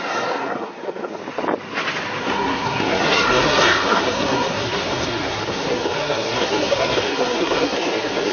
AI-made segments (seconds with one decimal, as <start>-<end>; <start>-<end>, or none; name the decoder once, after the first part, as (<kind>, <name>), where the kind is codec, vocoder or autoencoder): 0.0-1.2 (codec, SNAC); 2.2-8.3